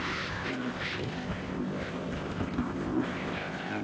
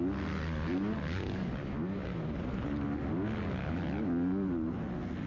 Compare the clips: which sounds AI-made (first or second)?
first